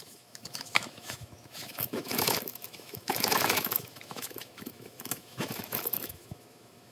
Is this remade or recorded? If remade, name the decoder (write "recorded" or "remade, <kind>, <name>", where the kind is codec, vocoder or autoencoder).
remade, autoencoder, DAC-VAE